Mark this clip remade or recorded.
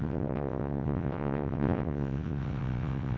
remade